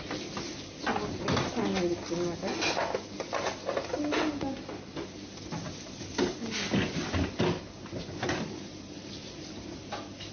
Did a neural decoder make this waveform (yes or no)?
no